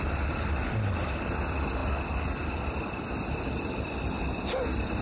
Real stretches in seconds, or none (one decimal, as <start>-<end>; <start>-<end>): 0.0-5.0